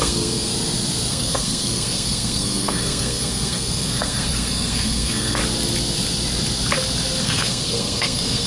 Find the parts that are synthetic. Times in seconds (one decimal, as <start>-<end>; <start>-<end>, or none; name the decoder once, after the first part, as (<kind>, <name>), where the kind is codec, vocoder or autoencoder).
0.0-0.5 (codec, SNAC); 1.1-5.4; 7.2-8.5